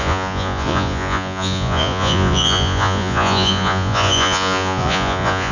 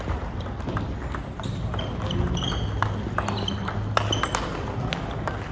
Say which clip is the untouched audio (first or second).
second